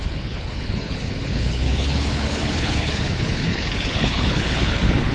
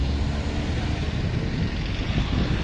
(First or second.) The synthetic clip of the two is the first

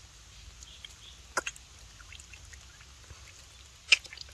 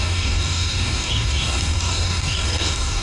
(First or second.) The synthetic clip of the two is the second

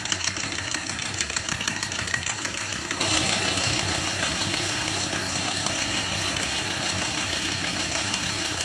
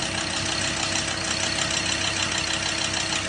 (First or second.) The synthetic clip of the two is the first